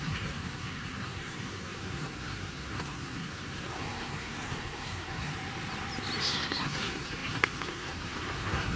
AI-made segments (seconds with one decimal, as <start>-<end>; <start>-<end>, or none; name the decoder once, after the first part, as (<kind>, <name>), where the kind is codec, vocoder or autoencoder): 0.0-5.3 (codec, SNAC); 6.2-8.8